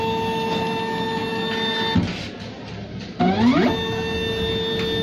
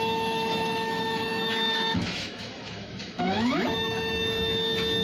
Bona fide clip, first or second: first